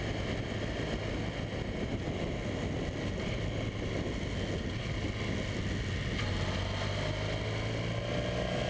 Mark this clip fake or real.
real